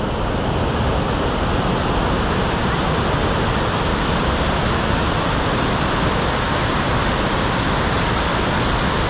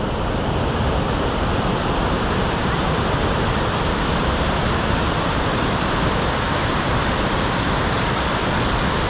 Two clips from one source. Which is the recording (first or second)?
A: first